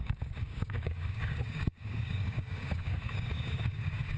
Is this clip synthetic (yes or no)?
yes